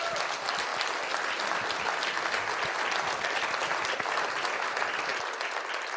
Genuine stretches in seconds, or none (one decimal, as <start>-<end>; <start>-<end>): 0.0-6.0

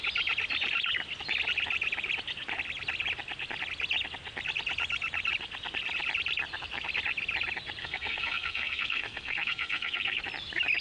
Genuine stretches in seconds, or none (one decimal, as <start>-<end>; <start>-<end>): 0.0-7.8; 10.2-10.8

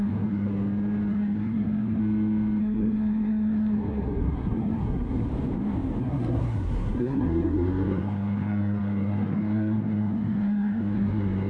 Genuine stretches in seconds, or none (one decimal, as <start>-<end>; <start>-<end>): 0.5-1.1; 2.0-2.6; 5.3-6.0

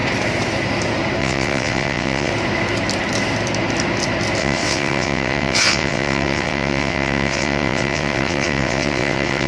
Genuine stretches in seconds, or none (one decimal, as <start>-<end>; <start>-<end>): 0.0-1.2; 2.3-4.4

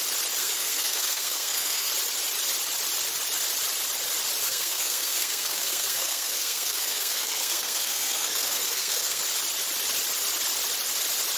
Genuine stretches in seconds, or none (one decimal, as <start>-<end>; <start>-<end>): 0.0-0.4; 1.9-4.4; 9.2-11.4

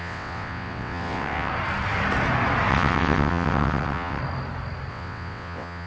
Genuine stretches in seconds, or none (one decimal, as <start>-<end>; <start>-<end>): 1.5-2.7; 4.2-4.9

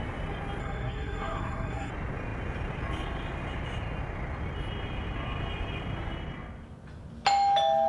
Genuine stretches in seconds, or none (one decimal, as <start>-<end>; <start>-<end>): 0.0-0.6; 1.9-7.9

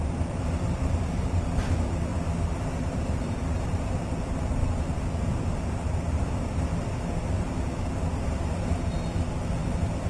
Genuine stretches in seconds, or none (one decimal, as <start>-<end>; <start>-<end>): 2.1-3.6; 4.6-5.2